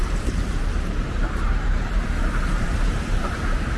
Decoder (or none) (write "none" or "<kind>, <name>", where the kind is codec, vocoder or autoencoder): vocoder, BigVGAN v2